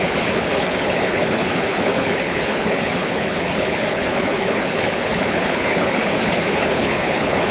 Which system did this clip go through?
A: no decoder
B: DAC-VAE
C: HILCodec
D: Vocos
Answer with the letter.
C